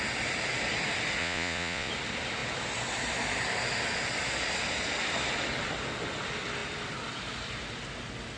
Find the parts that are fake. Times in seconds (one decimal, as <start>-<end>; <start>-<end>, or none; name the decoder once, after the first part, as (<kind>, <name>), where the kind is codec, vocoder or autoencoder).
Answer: 1.2-1.9 (vocoder, Vocos)